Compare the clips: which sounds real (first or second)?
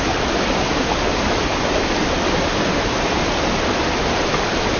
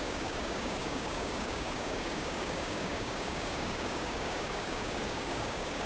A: first